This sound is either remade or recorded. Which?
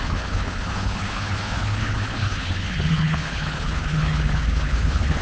remade